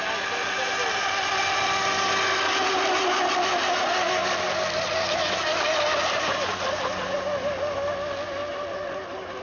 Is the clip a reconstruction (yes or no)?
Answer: no